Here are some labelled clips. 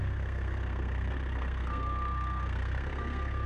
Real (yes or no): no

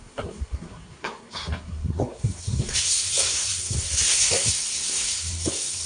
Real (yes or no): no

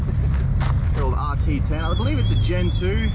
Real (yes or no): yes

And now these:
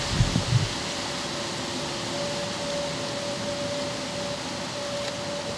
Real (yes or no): yes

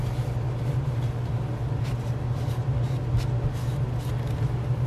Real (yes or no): yes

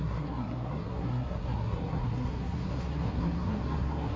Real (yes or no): no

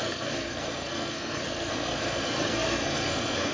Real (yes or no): no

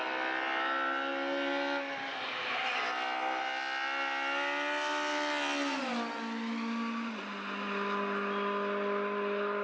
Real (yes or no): yes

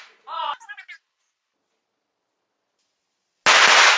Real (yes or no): yes